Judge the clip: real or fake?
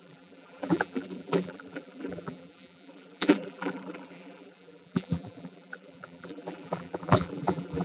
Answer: fake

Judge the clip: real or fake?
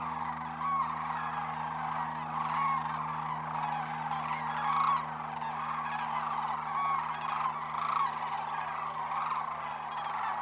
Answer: real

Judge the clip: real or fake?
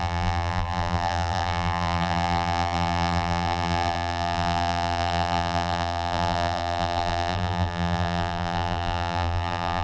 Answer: fake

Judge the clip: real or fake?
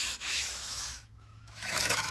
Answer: fake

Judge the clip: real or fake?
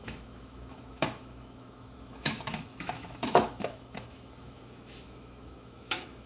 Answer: fake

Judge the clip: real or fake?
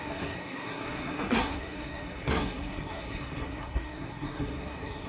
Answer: fake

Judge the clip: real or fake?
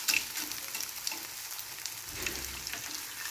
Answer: real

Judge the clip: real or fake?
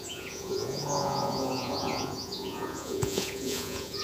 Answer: fake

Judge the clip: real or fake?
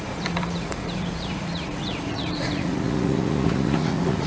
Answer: fake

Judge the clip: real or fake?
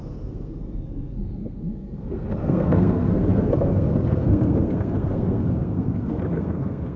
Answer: fake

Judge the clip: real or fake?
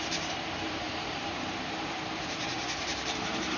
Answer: fake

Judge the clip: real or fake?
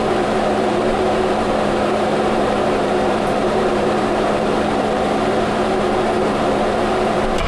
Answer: fake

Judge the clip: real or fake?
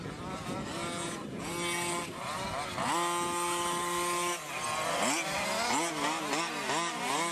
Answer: real